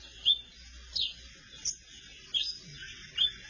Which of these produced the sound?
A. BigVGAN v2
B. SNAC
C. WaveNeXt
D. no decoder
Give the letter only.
D